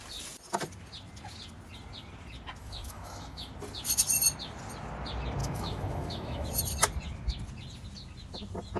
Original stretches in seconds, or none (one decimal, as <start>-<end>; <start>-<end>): 0.0-2.6; 3.5-5.4; 6.5-8.8